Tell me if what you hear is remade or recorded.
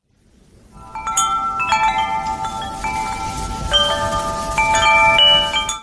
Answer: recorded